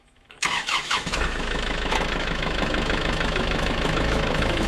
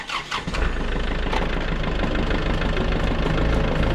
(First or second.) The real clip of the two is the second